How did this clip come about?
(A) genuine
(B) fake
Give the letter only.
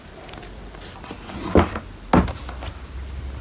A